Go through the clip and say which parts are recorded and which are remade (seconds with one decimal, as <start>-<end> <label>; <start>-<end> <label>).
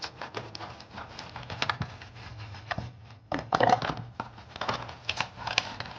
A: 0.0-2.3 recorded; 2.3-3.8 remade; 3.8-6.0 recorded